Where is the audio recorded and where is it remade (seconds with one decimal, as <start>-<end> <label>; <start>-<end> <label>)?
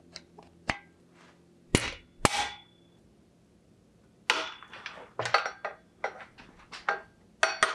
0.0-7.7 recorded